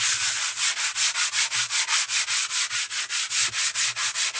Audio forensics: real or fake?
real